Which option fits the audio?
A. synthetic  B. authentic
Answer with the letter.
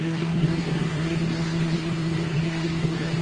A